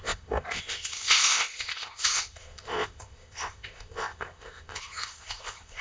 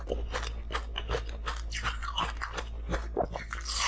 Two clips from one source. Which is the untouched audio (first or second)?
second